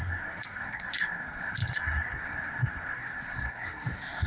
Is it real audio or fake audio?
fake